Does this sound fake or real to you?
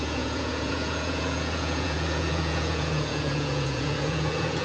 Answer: fake